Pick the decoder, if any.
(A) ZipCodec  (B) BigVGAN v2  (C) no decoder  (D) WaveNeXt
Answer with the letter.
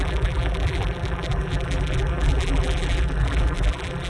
B